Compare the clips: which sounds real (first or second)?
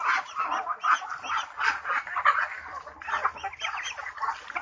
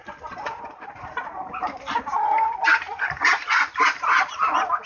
first